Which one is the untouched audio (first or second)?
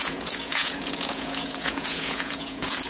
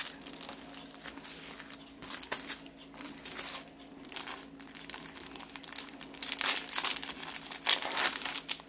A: second